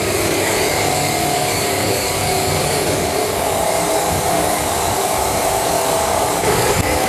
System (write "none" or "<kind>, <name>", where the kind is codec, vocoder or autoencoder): codec, DAC